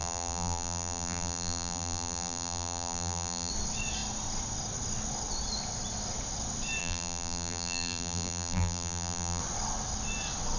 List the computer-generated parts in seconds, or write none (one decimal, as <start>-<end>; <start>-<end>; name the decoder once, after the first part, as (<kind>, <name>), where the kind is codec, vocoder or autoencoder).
0.0-3.5 (vocoder, BigVGAN v2); 6.8-9.4